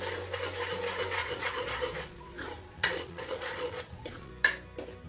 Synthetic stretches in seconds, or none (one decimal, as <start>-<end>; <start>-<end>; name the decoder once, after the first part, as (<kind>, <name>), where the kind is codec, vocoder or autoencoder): 1.2-4.3 (vocoder, Vocos)